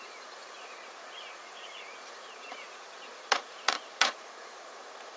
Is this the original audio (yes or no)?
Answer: no